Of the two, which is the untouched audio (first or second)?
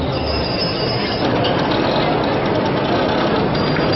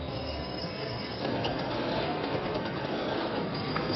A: first